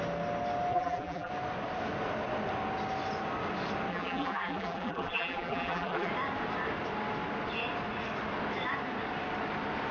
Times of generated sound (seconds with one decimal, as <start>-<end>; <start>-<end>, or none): 0.7-1.3; 3.9-6.1